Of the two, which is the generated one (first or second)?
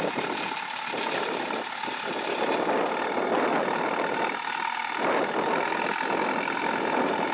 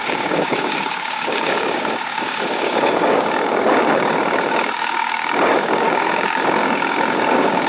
second